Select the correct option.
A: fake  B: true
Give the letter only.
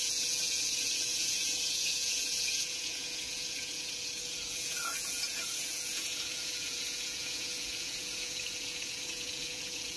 A